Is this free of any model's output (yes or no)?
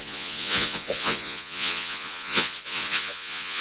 no